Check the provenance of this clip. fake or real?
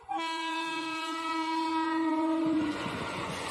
fake